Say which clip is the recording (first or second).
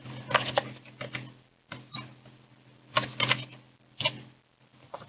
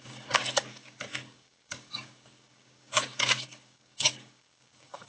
first